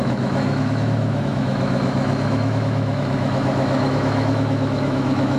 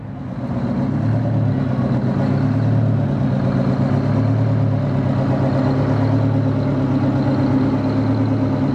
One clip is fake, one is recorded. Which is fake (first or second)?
first